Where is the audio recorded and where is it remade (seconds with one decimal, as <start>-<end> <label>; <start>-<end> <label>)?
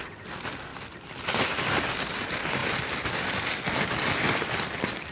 0.0-0.7 recorded; 0.7-1.8 remade; 1.8-5.1 recorded